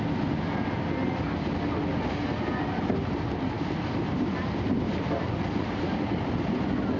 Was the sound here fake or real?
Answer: real